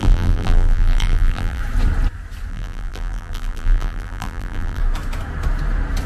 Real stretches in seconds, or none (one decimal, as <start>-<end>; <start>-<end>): 1.6-2.5; 4.8-6.1